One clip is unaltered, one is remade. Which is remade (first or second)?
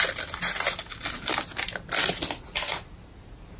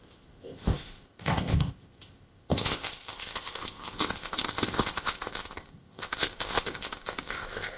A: second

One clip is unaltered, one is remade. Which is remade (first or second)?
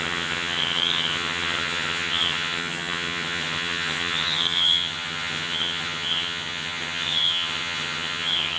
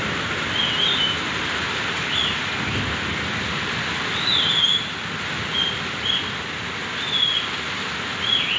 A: first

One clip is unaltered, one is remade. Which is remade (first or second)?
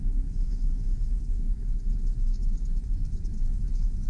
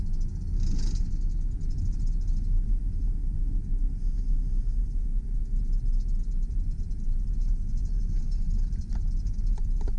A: first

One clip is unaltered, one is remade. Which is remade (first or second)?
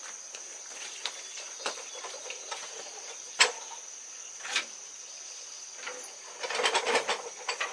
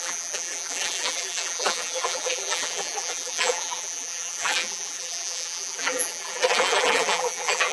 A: second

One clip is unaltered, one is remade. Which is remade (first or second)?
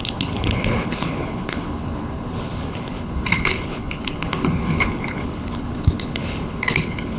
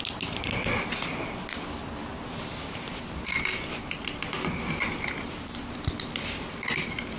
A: first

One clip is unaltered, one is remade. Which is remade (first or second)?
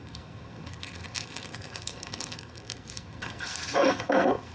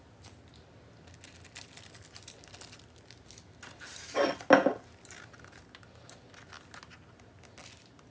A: first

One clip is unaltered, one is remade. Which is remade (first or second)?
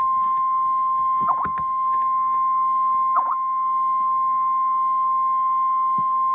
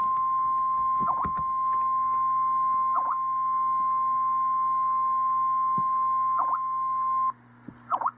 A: first